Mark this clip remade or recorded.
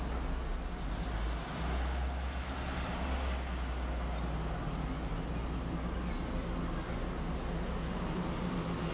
recorded